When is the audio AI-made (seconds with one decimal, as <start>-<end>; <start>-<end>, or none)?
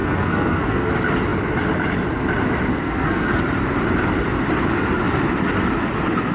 0.0-0.9; 2.7-3.4